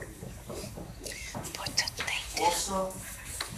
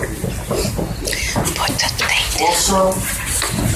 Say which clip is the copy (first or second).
first